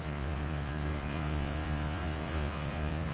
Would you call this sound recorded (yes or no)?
no